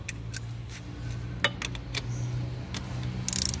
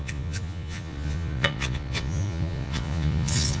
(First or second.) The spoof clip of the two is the second